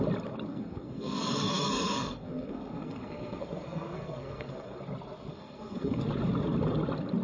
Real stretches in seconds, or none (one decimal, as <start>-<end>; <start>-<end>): 0.0-0.5; 4.8-5.3; 6.0-7.2